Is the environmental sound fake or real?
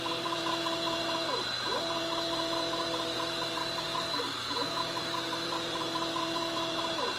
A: fake